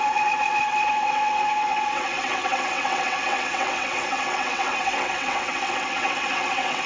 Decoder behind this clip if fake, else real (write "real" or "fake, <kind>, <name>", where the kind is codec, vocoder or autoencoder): fake, vocoder, WaveNeXt